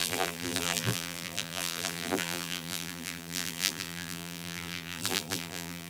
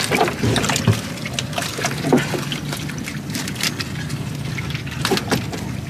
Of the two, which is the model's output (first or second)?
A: first